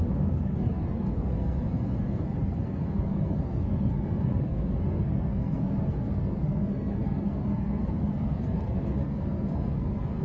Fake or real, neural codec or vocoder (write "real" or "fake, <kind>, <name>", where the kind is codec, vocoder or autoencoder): fake, codec, SNAC